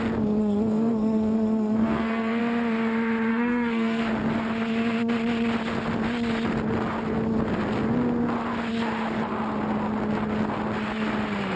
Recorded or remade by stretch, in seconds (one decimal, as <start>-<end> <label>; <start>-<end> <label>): 0.0-0.4 recorded; 0.4-2.4 remade; 2.4-3.3 recorded; 3.3-4.0 remade; 4.0-11.6 recorded